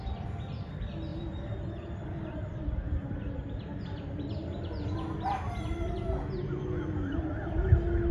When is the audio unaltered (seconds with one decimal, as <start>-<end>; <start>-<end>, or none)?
0.0-8.1